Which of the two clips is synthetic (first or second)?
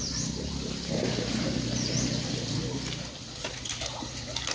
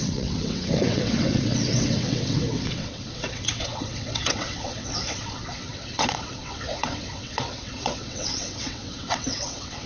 second